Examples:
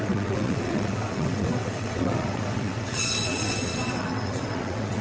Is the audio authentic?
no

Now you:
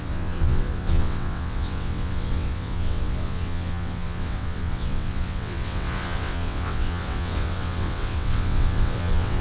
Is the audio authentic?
no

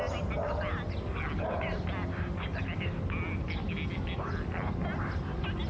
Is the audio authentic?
yes